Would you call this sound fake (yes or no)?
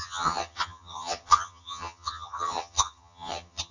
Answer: yes